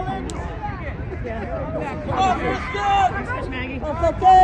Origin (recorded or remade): recorded